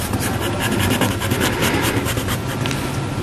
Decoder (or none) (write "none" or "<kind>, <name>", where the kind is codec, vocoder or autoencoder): none